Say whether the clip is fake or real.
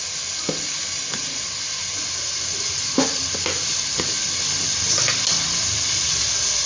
real